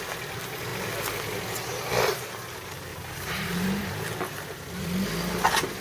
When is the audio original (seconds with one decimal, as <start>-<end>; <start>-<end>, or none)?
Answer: 0.0-2.9; 4.0-5.8